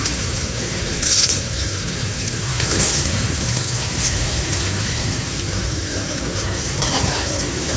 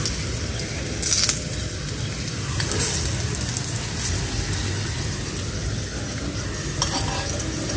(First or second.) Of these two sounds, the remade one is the first